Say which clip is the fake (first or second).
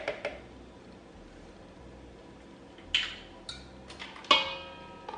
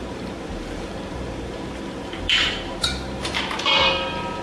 second